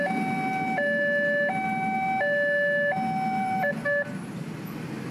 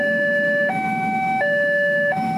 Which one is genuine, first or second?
first